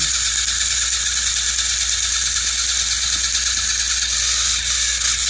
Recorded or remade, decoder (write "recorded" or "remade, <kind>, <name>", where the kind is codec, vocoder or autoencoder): recorded